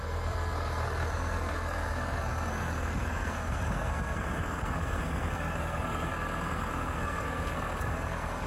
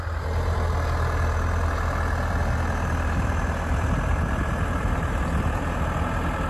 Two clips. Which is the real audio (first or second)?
second